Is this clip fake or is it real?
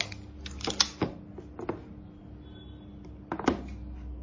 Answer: real